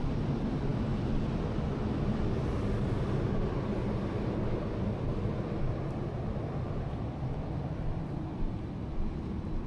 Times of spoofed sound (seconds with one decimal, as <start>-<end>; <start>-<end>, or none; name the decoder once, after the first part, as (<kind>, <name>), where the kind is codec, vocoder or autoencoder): none